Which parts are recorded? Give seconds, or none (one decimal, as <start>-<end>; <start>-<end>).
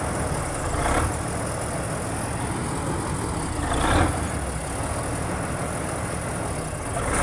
0.0-7.2